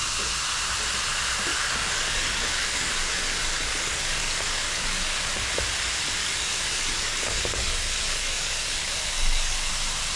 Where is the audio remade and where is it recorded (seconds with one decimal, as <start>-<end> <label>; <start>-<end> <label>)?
0.0-1.5 recorded; 1.5-5.5 remade; 5.5-6.2 recorded; 6.2-9.7 remade; 9.7-10.2 recorded